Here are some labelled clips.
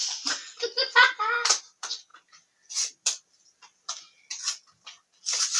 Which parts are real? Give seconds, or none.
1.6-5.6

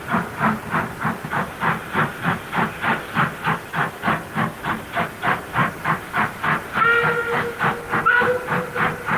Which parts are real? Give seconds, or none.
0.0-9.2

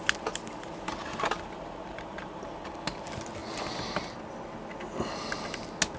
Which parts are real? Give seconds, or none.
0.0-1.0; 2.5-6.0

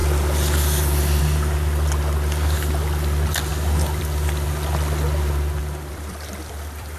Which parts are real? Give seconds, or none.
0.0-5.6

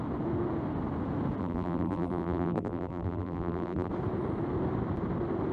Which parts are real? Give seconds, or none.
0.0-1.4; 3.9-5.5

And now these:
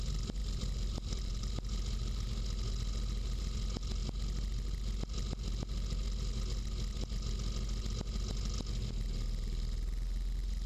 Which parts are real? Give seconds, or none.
0.0-0.4; 1.3-10.7